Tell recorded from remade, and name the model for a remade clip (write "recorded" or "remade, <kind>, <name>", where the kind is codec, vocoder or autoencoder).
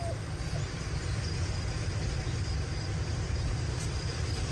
recorded